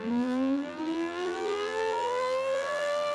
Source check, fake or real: fake